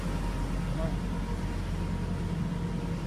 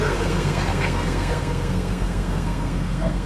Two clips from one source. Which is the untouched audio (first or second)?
first